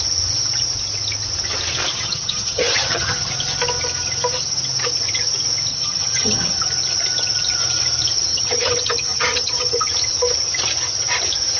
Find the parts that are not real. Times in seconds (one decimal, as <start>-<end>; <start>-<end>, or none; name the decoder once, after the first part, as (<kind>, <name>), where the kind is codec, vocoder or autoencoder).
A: 1.9-3.3 (vocoder, HiFi-GAN); 5.7-6.6; 8.3-9.9